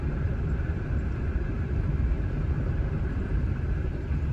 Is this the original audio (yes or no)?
no